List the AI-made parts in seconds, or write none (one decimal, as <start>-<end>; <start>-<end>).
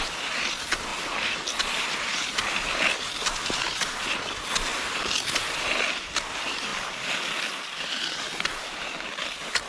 none